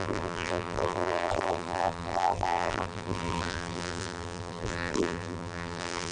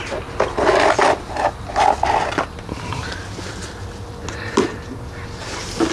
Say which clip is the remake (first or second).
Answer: first